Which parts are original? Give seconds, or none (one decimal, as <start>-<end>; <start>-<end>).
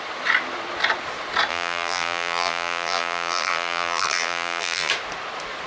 0.0-1.5; 4.9-5.7